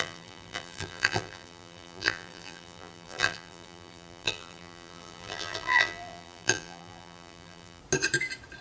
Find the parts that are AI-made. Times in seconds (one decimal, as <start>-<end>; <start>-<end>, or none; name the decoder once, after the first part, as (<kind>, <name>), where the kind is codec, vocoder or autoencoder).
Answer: 0.0-7.8 (vocoder, BigVGAN v2)